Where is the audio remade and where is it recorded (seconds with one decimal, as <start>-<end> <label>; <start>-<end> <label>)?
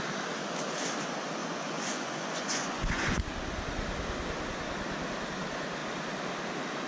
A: 0.0-1.4 recorded; 1.4-3.2 remade; 3.2-6.9 recorded